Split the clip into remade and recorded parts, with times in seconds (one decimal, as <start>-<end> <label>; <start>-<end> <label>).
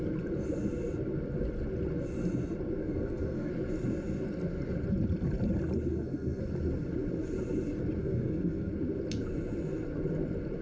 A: 0.0-2.8 recorded; 2.8-3.5 remade; 3.5-5.9 recorded; 5.9-6.4 remade; 6.4-8.0 recorded; 8.0-8.7 remade; 8.7-10.6 recorded